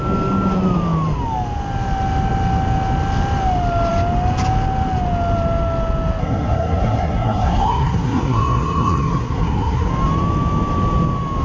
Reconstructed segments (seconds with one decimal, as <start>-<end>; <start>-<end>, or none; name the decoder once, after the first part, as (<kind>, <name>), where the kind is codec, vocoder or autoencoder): 6.2-9.9 (codec, SNAC)